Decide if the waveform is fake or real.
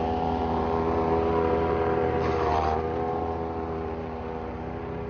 fake